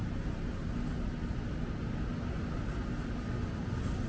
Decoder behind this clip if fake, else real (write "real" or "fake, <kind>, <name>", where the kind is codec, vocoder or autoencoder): real